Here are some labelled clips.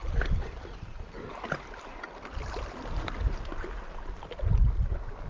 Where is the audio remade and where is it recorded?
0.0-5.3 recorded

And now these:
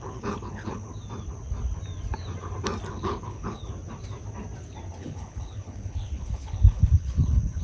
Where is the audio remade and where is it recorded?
0.0-0.9 remade; 0.9-2.9 recorded; 2.9-3.7 remade; 3.7-5.0 recorded; 5.0-7.6 remade

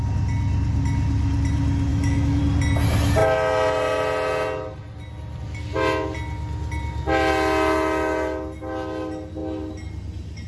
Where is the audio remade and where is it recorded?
0.0-1.9 recorded; 1.9-2.4 remade; 2.4-10.5 recorded

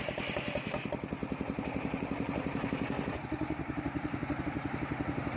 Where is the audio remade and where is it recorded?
0.0-1.2 recorded; 1.2-4.4 remade; 4.4-5.4 recorded

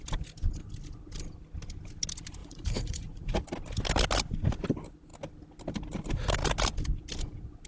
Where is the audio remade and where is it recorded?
0.0-2.4 recorded; 2.4-3.4 remade; 3.4-7.7 recorded

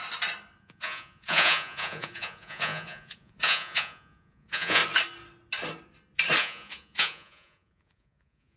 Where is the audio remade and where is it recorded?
0.0-0.6 recorded; 0.6-4.8 remade; 4.8-6.4 recorded; 6.4-8.6 remade

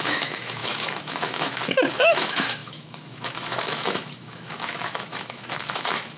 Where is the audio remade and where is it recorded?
0.0-6.2 remade